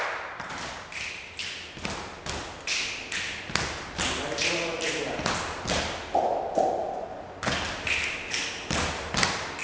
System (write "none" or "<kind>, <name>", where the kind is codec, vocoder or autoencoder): none